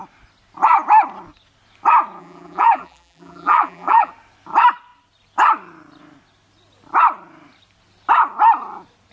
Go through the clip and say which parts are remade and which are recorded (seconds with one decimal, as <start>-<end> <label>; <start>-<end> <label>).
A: 0.0-2.2 recorded; 2.2-4.1 remade; 4.1-9.1 recorded